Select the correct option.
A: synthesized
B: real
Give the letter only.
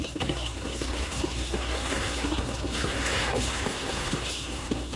A